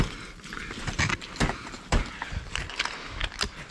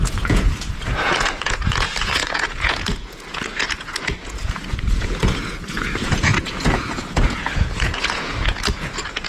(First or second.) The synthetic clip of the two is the second